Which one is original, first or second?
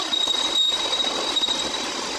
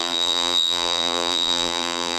first